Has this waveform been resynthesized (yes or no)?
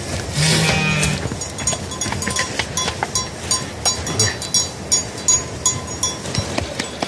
no